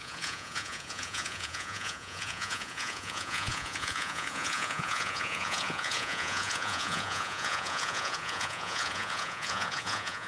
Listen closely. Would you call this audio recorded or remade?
remade